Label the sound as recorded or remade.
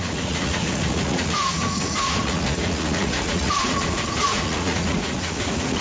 remade